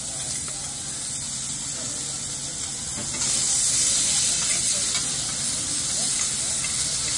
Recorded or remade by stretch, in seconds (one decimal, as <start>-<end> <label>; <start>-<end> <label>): 0.0-7.2 recorded